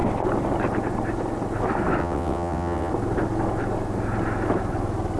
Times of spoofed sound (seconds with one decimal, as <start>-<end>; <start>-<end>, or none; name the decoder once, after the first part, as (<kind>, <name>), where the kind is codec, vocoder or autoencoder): 2.0-2.9 (vocoder, WaveNeXt)